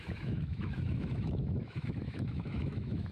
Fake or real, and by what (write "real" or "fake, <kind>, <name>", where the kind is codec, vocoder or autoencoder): fake, autoencoder, DAC-VAE